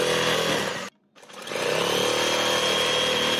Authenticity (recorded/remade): recorded